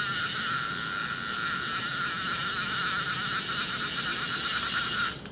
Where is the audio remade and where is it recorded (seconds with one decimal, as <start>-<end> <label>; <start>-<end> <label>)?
0.0-5.3 recorded